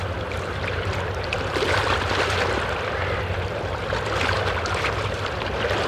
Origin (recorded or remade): remade